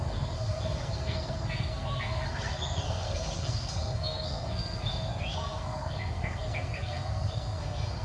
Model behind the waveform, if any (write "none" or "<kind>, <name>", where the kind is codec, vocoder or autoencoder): codec, SNAC